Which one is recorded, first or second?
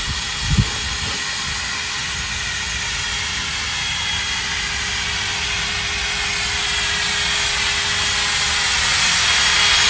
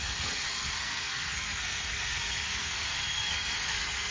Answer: first